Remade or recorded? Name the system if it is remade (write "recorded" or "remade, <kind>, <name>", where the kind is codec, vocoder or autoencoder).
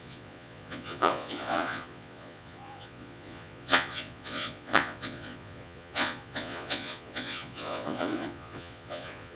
remade, vocoder, Vocos